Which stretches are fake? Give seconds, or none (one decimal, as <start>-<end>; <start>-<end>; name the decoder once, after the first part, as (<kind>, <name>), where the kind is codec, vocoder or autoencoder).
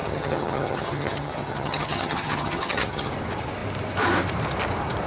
0.0-3.1 (vocoder, HiFi-GAN)